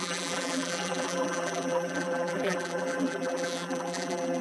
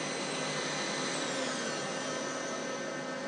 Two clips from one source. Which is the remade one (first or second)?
first